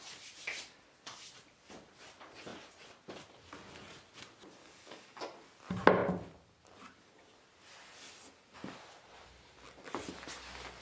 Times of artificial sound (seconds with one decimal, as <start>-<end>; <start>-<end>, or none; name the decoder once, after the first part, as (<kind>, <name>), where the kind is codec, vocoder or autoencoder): 4.6-5.2 (codec, DAC)